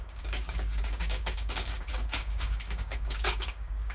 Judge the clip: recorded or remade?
remade